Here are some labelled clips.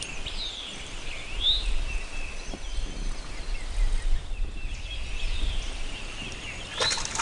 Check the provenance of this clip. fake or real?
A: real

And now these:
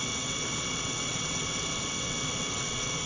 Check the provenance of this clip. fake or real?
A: fake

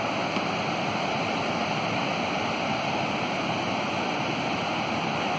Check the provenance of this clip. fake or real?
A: real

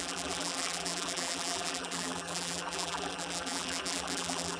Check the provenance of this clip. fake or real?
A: fake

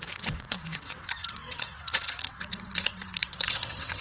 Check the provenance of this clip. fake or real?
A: fake